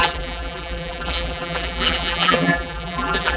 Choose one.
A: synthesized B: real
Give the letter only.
A